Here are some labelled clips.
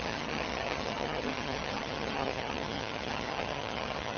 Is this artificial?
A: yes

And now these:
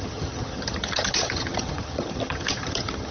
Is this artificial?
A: yes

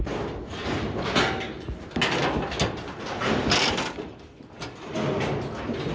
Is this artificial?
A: no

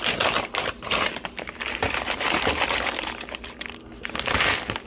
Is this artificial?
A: no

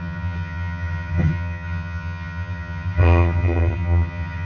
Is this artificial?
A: yes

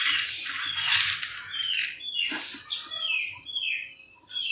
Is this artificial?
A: no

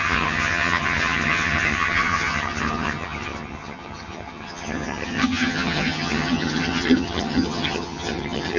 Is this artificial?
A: yes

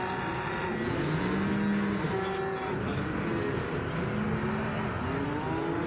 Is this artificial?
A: no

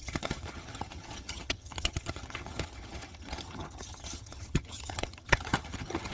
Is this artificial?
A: yes